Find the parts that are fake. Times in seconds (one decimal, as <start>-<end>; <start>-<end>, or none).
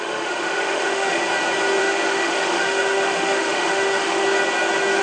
0.0-1.2; 1.8-4.2